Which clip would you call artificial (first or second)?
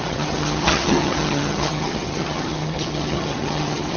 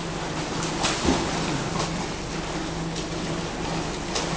first